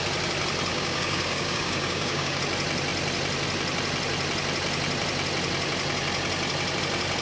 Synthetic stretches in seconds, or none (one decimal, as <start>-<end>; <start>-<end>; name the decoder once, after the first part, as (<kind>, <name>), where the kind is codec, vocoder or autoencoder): 0.7-2.4 (codec, DAC)